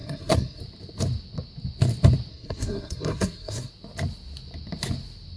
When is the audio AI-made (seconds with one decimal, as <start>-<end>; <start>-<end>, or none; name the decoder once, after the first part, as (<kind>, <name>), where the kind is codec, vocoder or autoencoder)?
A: 0.0-0.6 (codec, SNAC); 2.3-3.7